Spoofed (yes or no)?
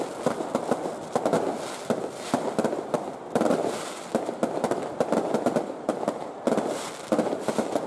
no